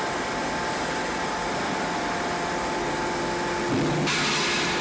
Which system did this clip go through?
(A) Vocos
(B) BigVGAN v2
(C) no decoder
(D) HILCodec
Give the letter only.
C